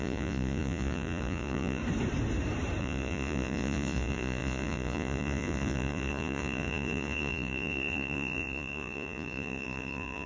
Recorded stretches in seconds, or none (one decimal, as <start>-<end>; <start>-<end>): 1.8-2.8